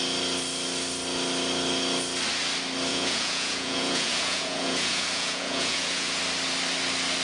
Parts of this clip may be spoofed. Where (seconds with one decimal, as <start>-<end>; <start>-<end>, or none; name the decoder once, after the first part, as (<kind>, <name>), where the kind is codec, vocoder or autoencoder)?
2.9-6.2 (vocoder, Vocos)